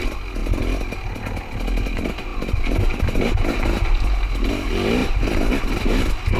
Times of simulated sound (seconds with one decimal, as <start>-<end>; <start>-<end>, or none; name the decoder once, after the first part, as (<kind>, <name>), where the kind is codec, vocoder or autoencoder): none